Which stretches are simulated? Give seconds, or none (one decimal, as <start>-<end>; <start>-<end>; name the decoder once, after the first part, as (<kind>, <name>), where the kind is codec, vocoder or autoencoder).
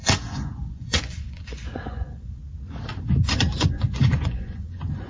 0.0-2.4 (vocoder, Vocos); 3.0-5.1